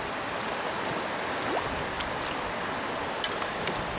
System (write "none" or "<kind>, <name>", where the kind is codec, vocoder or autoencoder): none